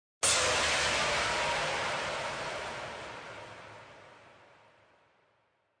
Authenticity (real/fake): real